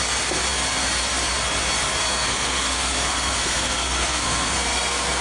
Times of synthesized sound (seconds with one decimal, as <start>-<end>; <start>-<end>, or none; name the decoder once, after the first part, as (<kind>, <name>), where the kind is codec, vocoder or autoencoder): 2.0-5.2 (codec, SNAC)